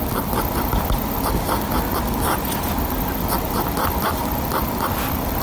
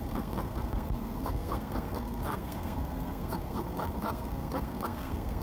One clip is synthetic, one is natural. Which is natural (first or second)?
first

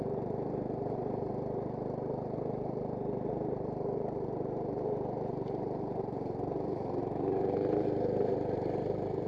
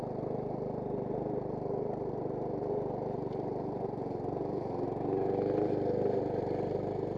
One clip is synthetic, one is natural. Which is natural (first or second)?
second